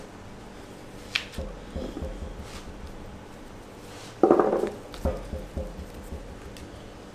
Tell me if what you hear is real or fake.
real